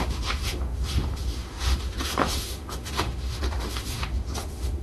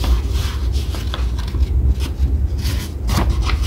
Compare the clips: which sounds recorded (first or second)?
second